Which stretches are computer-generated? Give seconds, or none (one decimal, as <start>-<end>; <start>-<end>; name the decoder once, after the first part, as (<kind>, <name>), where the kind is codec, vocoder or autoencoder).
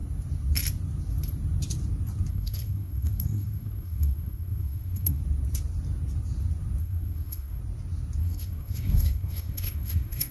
2.3-5.2 (codec, SNAC); 6.8-7.6; 8.2-10.3